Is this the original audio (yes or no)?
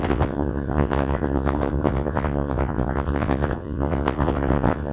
no